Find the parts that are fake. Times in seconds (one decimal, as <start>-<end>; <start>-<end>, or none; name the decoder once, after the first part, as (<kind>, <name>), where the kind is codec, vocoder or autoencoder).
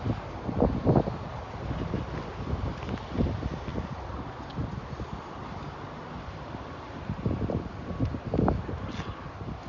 3.7-4.8 (vocoder, BigVGAN v2)